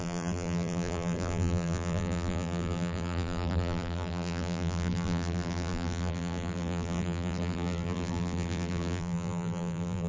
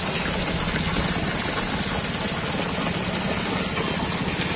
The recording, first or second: second